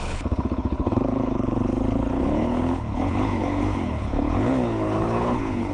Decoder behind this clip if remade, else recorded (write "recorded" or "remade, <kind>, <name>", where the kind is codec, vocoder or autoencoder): remade, codec, HILCodec